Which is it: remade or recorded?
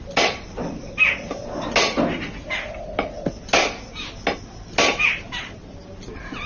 recorded